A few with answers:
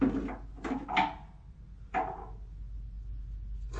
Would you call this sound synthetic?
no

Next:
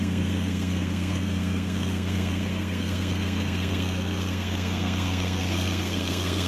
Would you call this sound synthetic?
yes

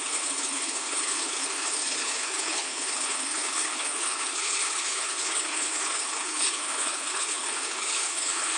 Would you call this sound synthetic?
yes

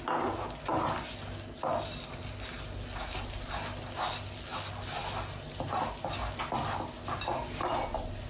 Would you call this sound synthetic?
no